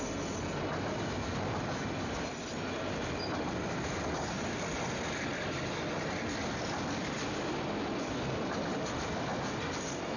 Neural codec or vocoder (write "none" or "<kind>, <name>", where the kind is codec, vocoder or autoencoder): none